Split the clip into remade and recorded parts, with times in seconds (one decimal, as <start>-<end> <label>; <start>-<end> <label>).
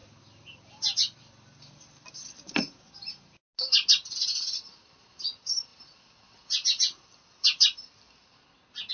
0.0-8.9 recorded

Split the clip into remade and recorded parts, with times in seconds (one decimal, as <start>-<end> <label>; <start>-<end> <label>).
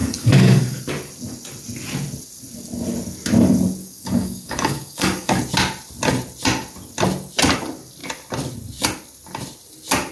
0.0-0.8 remade; 0.8-3.8 recorded; 3.8-5.4 remade; 5.4-10.1 recorded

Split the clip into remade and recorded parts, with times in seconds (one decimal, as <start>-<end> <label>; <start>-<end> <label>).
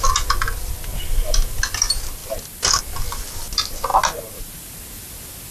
0.0-5.5 recorded